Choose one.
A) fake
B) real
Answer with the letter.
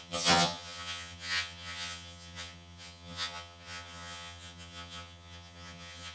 A